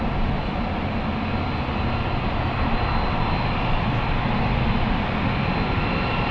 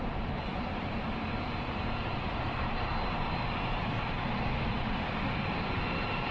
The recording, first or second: first